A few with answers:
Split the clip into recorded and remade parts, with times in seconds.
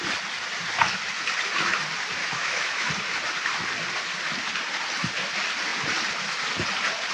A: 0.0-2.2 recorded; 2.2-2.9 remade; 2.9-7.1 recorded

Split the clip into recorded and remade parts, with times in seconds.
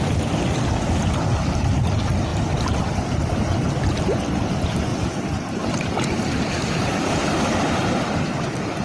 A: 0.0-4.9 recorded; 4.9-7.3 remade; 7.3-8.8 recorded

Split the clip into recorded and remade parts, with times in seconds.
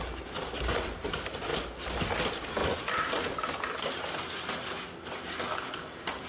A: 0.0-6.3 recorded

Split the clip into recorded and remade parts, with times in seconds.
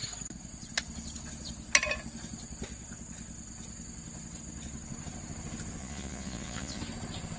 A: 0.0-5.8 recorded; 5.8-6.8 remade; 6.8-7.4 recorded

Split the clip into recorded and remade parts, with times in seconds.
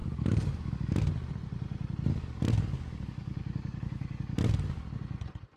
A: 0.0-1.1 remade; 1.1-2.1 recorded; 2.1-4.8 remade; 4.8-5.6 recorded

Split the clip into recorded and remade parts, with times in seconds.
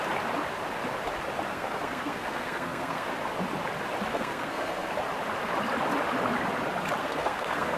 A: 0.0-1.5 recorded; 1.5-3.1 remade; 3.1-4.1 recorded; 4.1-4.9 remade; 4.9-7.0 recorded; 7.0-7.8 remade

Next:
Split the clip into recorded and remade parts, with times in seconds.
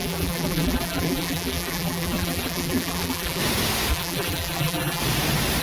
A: 0.0-3.4 remade; 3.4-3.9 recorded; 3.9-5.0 remade; 5.0-5.6 recorded